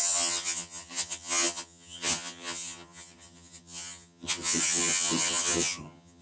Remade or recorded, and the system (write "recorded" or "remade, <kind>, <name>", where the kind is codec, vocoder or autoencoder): remade, vocoder, HiFi-GAN